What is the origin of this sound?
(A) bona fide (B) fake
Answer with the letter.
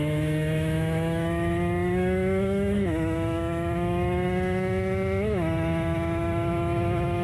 B